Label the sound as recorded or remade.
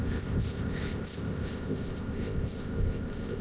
remade